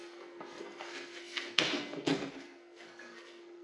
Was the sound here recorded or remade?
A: remade